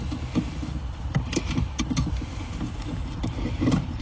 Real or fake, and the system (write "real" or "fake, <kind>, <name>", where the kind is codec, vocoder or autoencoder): fake, vocoder, BigVGAN v2